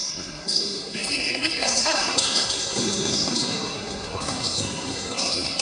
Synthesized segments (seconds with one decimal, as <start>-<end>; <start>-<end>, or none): 0.0-5.6